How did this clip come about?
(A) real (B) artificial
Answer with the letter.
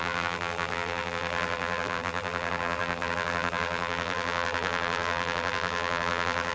B